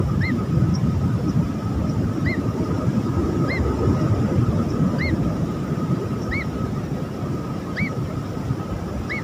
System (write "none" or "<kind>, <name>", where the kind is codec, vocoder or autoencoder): none